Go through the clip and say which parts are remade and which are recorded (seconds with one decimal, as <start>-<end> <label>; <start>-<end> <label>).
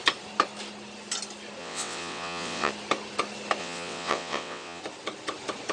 0.0-1.6 recorded; 1.6-2.7 remade; 2.7-3.6 recorded; 3.6-4.8 remade; 4.8-5.7 recorded